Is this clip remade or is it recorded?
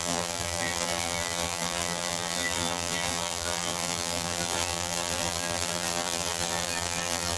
remade